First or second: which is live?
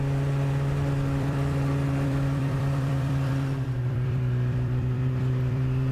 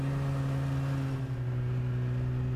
second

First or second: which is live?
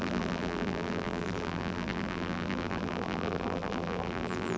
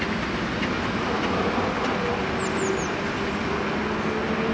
second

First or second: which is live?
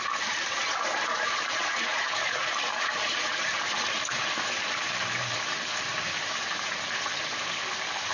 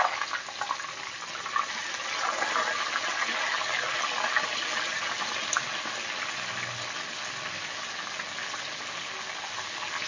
second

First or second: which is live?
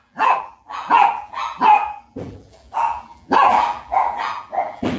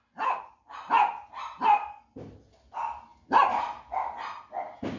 second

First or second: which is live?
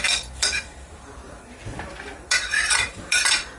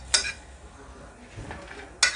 second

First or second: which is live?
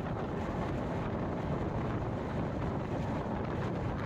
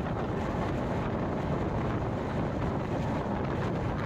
second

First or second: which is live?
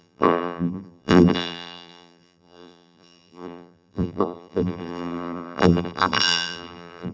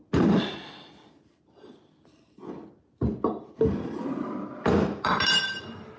second